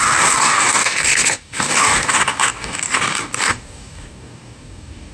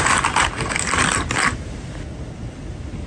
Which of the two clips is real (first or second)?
second